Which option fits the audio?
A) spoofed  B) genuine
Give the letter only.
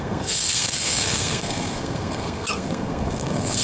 A